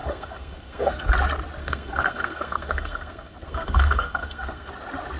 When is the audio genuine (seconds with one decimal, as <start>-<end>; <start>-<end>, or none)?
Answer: 1.1-1.6; 4.7-5.2